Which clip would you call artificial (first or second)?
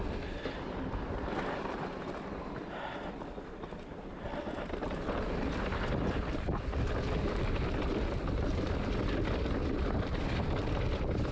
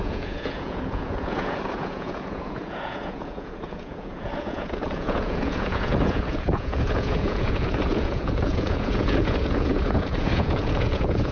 second